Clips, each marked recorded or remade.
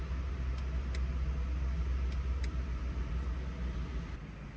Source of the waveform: recorded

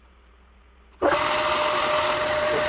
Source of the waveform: recorded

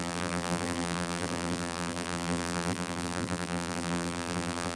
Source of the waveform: remade